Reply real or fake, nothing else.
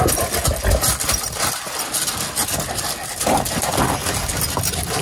real